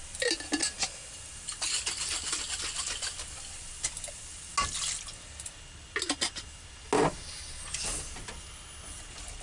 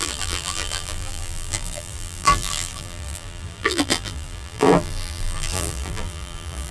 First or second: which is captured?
first